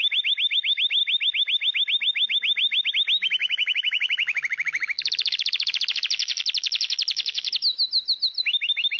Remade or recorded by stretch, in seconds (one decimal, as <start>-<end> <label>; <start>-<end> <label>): 0.0-3.4 recorded; 3.4-7.5 remade; 7.5-9.0 recorded